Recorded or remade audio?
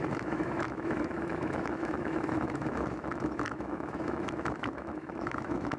remade